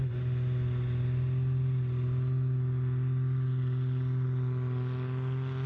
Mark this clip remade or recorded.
recorded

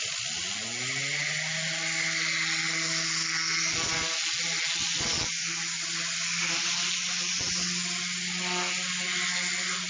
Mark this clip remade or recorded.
recorded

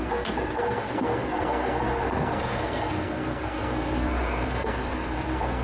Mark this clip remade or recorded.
remade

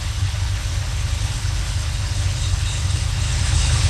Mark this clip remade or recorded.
remade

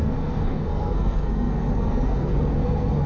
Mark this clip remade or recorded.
remade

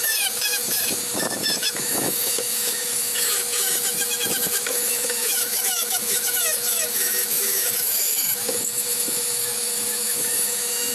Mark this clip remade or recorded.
remade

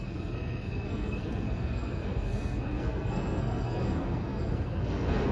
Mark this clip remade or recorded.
remade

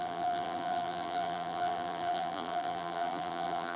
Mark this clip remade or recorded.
remade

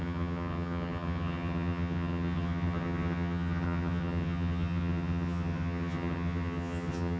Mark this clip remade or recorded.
remade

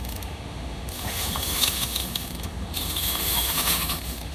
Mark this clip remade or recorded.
remade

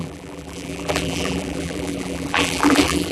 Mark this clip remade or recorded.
remade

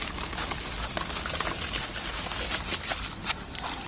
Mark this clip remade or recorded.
recorded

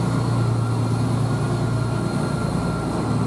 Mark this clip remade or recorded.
recorded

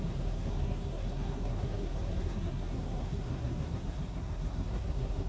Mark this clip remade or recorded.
remade